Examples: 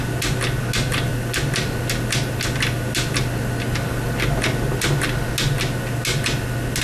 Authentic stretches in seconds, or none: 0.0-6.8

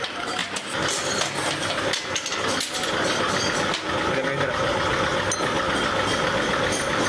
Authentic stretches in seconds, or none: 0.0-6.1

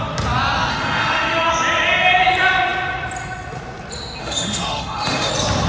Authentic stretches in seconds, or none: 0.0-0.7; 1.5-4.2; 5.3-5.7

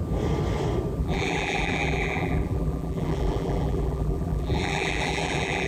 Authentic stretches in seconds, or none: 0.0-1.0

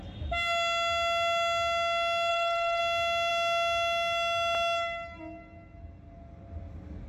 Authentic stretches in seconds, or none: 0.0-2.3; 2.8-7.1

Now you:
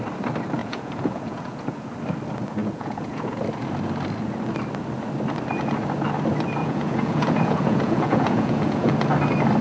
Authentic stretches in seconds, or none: 0.0-0.6; 1.9-2.6; 3.4-6.6; 9.0-9.6

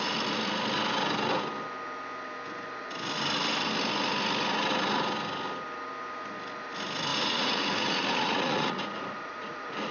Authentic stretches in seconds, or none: 0.0-7.1

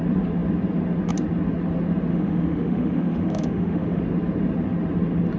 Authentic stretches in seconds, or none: 0.0-2.1; 4.0-5.4